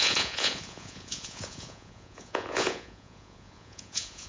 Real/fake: fake